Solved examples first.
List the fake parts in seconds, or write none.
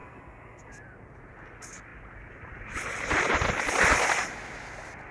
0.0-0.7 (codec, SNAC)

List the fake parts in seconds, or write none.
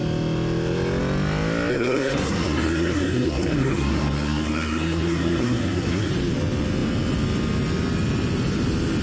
1.7-6.1 (codec, SNAC)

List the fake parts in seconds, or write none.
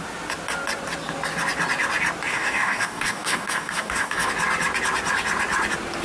2.3-4.3 (codec, DAC)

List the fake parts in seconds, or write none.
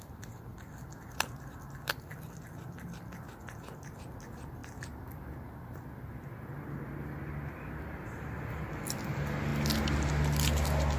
none